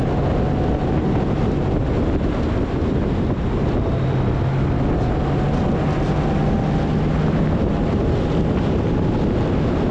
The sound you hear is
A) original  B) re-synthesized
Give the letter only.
A